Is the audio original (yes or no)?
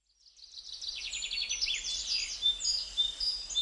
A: yes